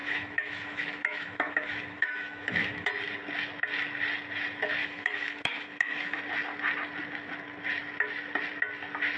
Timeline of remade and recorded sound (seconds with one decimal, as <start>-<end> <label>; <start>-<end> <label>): 0.0-2.9 remade; 2.9-4.8 recorded; 4.8-6.2 remade; 6.2-9.2 recorded